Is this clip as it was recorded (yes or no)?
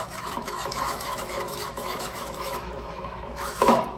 no